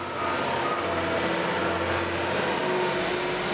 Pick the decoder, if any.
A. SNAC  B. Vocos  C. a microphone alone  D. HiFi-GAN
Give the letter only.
C